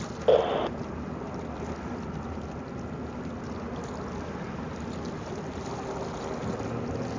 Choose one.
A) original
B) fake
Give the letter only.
A